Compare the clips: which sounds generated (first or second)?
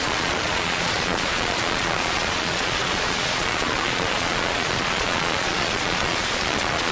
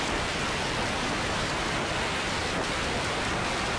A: first